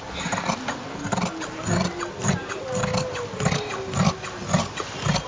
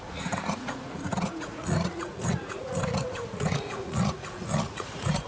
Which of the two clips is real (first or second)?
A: first